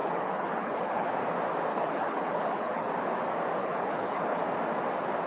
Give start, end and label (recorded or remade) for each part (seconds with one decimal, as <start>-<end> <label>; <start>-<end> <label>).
0.0-1.1 remade; 1.1-1.7 recorded; 1.7-2.9 remade; 2.9-3.6 recorded; 3.6-4.4 remade; 4.4-5.3 recorded